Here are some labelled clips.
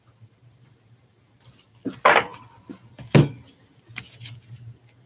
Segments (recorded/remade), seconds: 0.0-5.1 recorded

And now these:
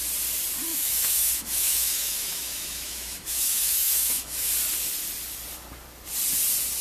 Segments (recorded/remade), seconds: 0.0-0.7 recorded; 0.7-4.5 remade; 4.5-6.8 recorded

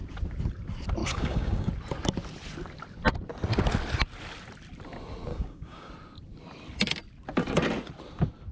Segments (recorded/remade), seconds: 0.0-1.0 recorded; 1.0-1.7 remade; 1.7-5.3 recorded; 5.3-5.9 remade; 5.9-8.5 recorded

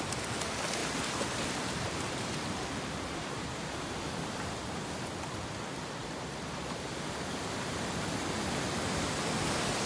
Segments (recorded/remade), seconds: 0.0-0.8 recorded; 0.8-1.4 remade; 1.4-9.9 recorded